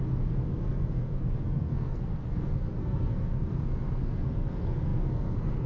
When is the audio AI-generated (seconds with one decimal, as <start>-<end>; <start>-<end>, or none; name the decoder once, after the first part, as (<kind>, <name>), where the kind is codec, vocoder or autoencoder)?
0.0-5.7 (codec, SNAC)